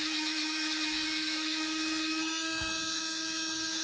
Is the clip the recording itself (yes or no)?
no